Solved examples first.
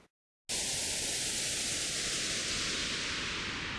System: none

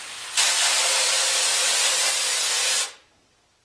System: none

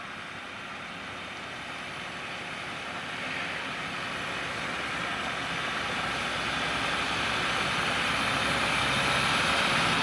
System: none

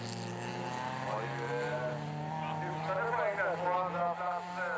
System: none